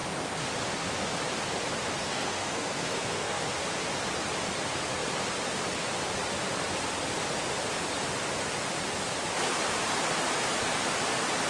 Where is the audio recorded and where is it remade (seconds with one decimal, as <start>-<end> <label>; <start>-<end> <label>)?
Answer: 0.0-2.0 recorded; 2.0-3.4 remade; 3.4-11.5 recorded

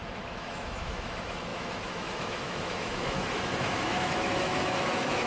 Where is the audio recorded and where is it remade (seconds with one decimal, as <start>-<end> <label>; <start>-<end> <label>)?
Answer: 0.0-5.3 remade

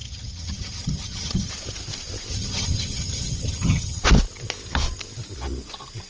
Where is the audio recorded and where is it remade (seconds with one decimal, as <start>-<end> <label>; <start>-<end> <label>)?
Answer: 0.0-1.5 remade; 1.5-2.3 recorded; 2.3-4.0 remade; 4.0-6.1 recorded